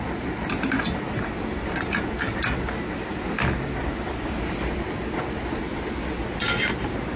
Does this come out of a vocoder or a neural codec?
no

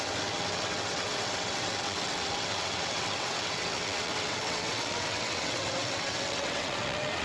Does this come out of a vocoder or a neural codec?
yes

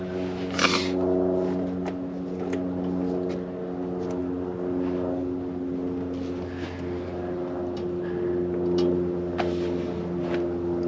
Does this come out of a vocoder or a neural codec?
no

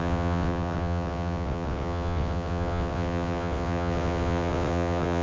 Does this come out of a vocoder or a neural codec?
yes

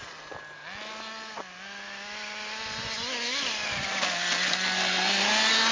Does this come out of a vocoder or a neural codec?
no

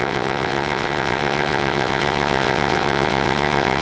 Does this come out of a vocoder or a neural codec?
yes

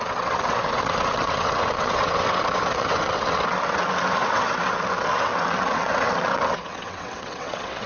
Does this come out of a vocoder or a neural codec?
yes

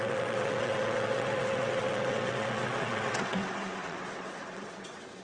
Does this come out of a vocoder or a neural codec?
yes